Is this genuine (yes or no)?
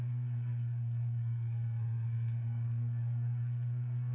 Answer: no